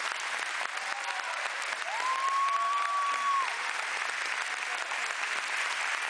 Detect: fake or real real